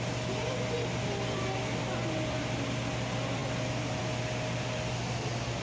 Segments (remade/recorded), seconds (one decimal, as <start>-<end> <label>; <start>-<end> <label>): 0.0-5.6 recorded